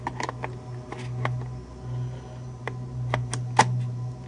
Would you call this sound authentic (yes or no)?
yes